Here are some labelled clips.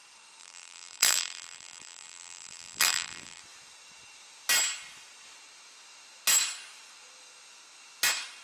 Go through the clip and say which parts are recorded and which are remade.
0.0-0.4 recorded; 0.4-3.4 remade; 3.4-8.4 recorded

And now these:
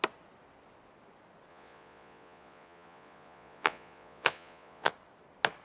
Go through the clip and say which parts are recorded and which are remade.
0.0-1.5 recorded; 1.5-4.9 remade; 4.9-5.6 recorded

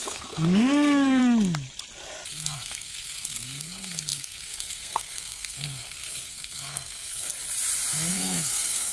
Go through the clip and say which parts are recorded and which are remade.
0.0-1.2 remade; 1.2-2.3 recorded; 2.3-7.3 remade; 7.3-8.1 recorded; 8.1-8.9 remade

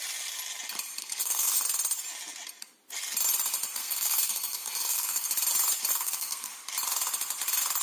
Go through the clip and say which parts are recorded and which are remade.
0.0-1.0 recorded; 1.0-1.6 remade; 1.6-3.8 recorded; 3.8-5.3 remade; 5.3-5.9 recorded; 5.9-6.5 remade; 6.5-7.8 recorded

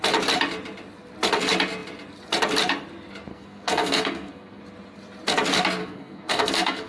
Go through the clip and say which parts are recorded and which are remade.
0.0-3.3 recorded; 3.3-4.6 remade; 4.6-5.8 recorded; 5.8-6.9 remade

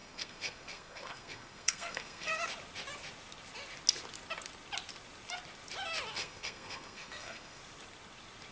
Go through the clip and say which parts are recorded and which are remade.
0.0-2.3 remade; 2.3-6.1 recorded; 6.1-7.6 remade; 7.6-8.5 recorded

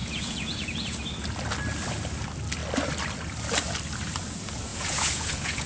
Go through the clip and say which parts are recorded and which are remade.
0.0-1.0 remade; 1.0-4.7 recorded; 4.7-5.7 remade